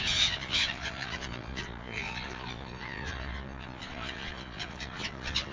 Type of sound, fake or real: fake